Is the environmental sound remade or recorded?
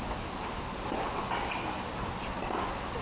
recorded